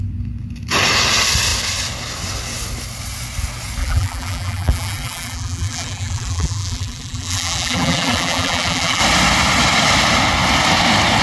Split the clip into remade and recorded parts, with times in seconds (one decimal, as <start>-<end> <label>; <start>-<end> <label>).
0.0-3.8 recorded; 3.8-9.0 remade; 9.0-11.2 recorded